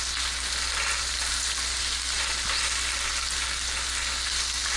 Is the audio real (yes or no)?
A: yes